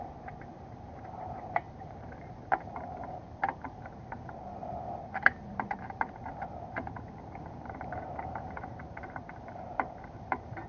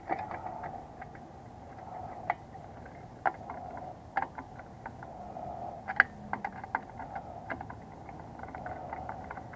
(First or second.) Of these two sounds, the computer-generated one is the first